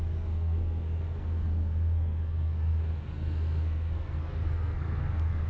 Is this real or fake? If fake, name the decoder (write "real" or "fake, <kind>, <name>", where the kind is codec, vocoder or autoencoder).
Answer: fake, codec, SNAC